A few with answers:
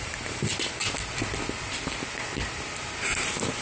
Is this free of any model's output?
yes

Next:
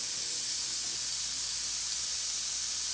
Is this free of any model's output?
yes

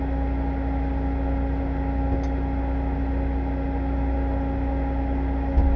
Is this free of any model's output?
yes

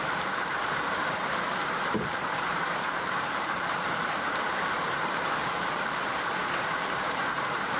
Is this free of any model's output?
no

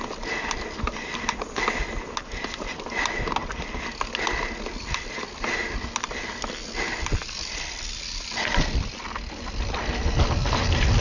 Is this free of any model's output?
yes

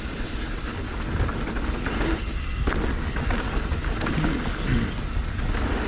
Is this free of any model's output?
yes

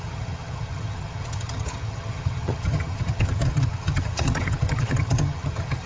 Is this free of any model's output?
no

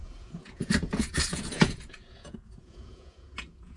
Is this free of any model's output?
no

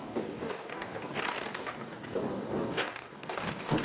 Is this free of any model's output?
no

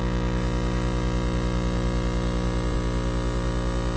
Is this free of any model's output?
yes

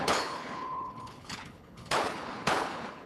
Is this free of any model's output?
no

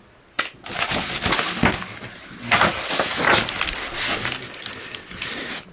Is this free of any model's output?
yes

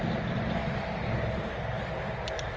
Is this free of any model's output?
yes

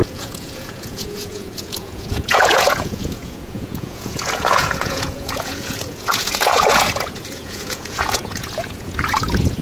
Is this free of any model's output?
no